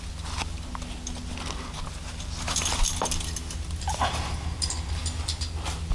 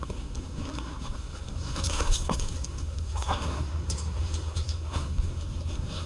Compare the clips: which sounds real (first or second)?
first